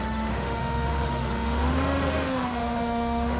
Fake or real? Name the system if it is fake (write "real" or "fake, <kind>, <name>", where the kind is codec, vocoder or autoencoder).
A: fake, autoencoder, DAC-VAE